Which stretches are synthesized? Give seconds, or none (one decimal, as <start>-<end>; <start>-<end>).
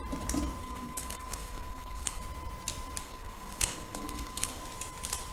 0.6-2.2; 3.0-4.6